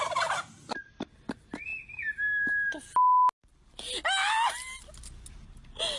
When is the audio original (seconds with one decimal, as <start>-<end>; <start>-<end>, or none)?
0.0-6.0